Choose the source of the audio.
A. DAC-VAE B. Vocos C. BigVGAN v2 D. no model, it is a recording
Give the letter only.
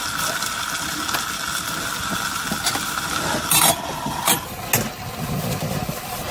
D